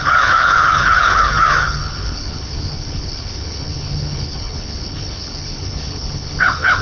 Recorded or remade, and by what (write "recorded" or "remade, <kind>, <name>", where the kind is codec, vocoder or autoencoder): remade, codec, HILCodec